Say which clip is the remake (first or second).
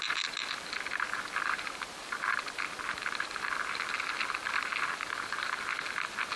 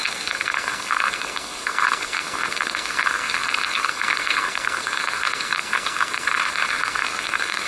second